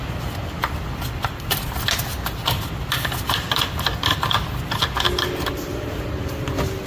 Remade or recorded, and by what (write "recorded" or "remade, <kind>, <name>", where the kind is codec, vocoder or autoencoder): recorded